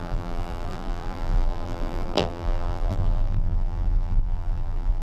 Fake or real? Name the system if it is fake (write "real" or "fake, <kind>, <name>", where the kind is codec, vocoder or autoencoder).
fake, vocoder, BigVGAN v2